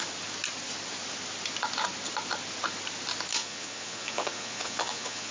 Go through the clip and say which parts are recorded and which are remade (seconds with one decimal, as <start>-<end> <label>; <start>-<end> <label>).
0.0-3.4 recorded; 3.4-5.3 remade